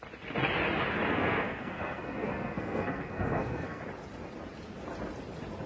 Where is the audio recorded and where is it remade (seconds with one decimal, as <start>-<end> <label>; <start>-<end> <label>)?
0.0-1.1 recorded; 1.1-3.8 remade; 3.8-5.7 recorded